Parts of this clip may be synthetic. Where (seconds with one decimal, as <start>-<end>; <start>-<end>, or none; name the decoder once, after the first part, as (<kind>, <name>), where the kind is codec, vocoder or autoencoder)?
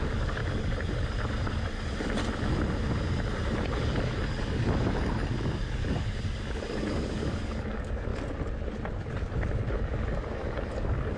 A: 0.0-0.4 (codec, DAC); 3.8-8.1; 9.7-11.2